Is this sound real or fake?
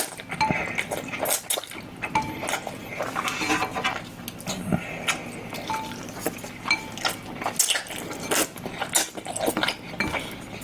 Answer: real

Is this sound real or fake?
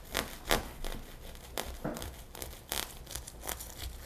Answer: real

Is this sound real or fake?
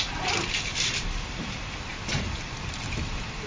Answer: fake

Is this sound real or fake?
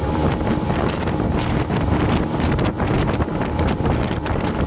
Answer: fake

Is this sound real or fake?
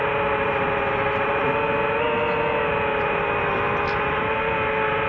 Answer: real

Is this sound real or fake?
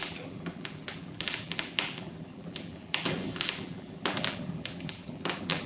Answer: fake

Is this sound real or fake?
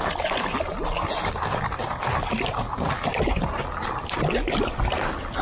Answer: real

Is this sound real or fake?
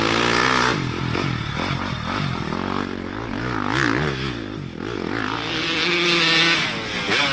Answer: real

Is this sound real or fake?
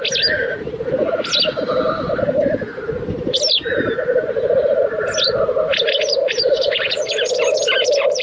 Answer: real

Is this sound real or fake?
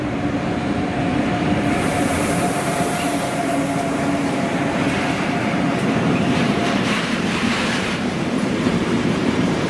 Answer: fake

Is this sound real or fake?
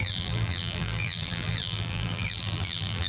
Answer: fake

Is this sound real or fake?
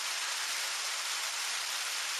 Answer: real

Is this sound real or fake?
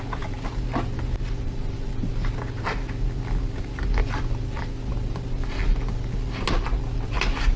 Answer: real